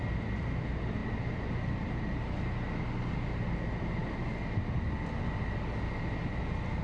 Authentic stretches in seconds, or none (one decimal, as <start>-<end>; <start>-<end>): 0.0-1.0; 2.2-6.8